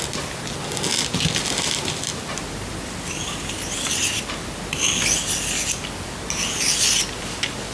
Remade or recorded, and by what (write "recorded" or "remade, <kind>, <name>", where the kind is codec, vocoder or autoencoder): recorded